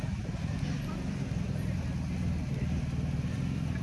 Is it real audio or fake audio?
real